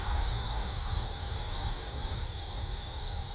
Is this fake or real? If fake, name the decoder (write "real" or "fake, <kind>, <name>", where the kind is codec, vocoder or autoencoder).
fake, codec, DAC